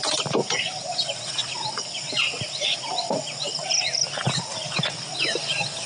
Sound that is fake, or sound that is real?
real